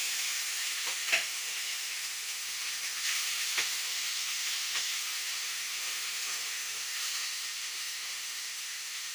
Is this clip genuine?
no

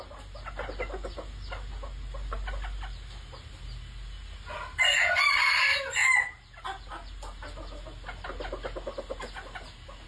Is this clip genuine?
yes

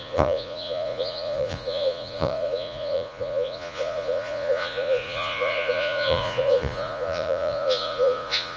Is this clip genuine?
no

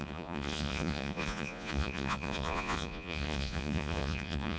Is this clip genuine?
no